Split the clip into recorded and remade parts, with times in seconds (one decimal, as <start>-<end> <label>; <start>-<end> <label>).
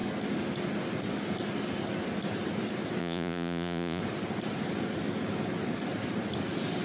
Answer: 0.0-3.0 recorded; 3.0-4.0 remade; 4.0-6.8 recorded